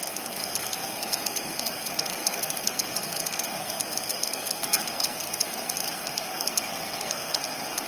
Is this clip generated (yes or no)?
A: yes